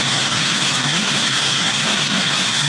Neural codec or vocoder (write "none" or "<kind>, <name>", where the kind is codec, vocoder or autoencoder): codec, SNAC